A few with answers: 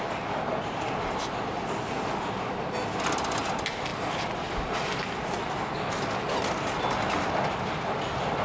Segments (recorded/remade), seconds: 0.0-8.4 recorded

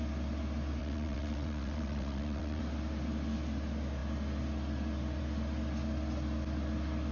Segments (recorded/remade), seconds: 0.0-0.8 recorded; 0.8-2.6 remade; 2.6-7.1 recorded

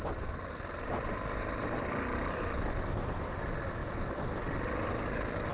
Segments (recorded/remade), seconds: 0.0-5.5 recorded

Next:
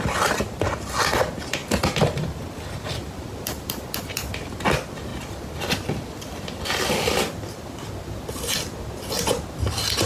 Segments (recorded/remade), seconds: 0.0-1.6 recorded; 1.6-3.9 remade; 3.9-5.1 recorded; 5.1-10.1 remade